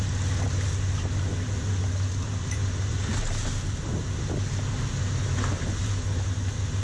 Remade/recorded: recorded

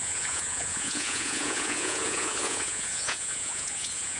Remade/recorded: remade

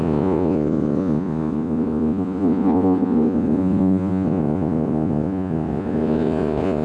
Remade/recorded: remade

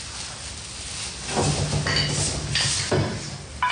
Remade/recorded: recorded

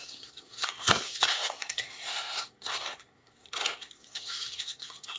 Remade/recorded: remade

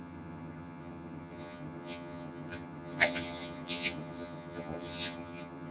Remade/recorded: remade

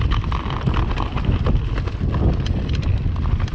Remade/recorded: recorded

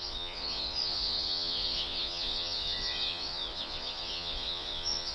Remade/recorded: remade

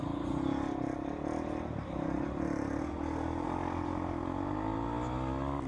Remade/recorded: recorded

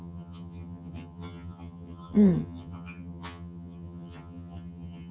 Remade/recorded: remade